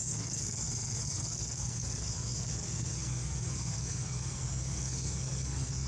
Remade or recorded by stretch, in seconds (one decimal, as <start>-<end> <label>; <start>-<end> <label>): 0.0-5.9 remade